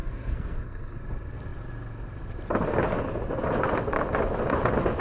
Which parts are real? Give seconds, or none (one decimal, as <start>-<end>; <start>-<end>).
1.0-5.0